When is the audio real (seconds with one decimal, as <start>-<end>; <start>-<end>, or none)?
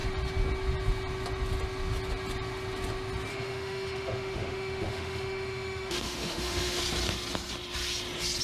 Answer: 0.0-3.3; 6.8-8.4